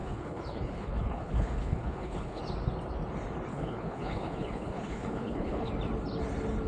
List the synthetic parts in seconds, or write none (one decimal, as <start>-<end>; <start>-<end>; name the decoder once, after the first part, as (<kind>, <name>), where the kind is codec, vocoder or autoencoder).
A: 0.0-2.4 (codec, HILCodec); 3.5-5.7